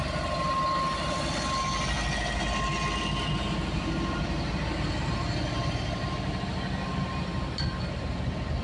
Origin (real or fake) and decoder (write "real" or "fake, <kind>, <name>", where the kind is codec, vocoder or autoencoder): real